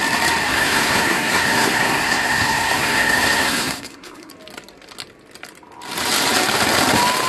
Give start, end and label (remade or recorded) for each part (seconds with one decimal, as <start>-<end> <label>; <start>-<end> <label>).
0.0-0.4 recorded; 0.4-4.3 remade; 4.3-7.3 recorded